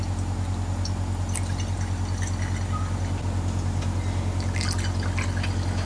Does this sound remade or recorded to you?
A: recorded